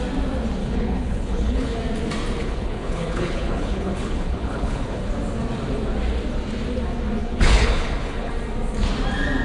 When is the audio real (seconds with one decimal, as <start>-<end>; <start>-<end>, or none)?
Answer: 0.0-0.6; 1.8-2.4; 5.1-7.2; 8.3-9.4